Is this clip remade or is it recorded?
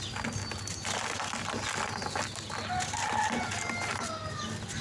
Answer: recorded